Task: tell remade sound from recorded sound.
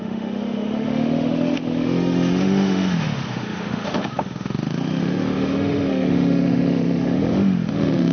remade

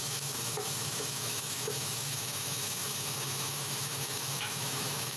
remade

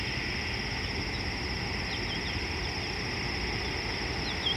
recorded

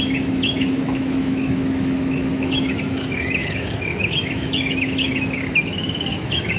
remade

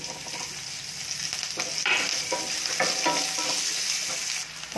recorded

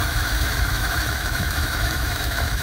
remade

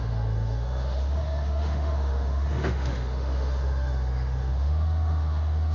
remade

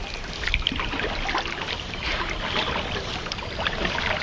recorded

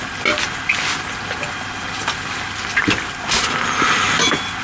recorded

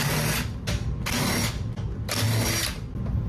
recorded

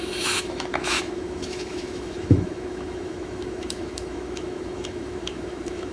remade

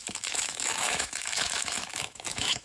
remade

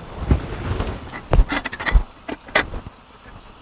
recorded